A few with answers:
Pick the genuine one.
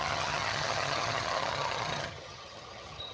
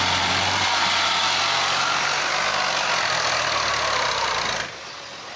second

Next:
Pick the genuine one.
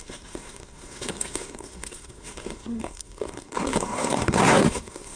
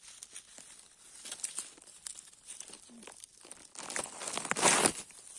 second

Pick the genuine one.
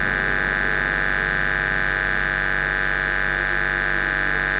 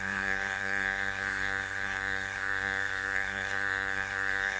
first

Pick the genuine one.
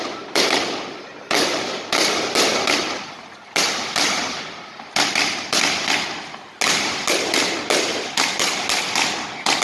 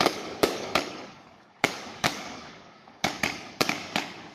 first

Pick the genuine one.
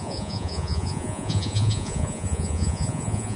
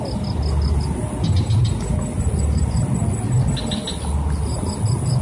second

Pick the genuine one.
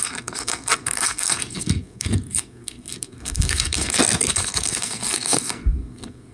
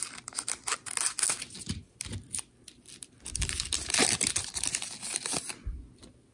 second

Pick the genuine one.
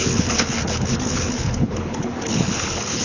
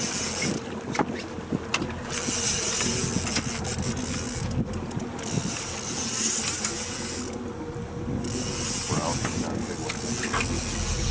second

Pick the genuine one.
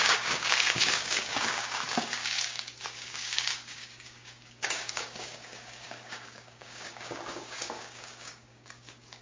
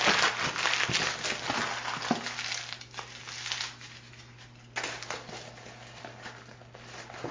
second